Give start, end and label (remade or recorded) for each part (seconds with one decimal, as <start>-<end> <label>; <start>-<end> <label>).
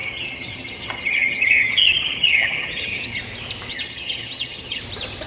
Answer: 0.0-3.2 remade; 3.2-3.7 recorded; 3.7-4.8 remade; 4.8-5.3 recorded